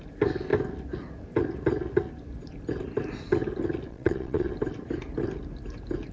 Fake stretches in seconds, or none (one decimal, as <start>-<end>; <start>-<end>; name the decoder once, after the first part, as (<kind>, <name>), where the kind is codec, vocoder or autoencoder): 3.9-4.5 (vocoder, Vocos)